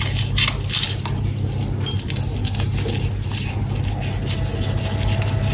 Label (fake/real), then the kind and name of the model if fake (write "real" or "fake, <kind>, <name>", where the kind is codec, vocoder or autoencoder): real